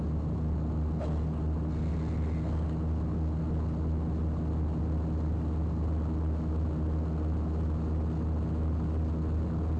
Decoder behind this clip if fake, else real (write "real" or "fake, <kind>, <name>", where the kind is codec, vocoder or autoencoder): real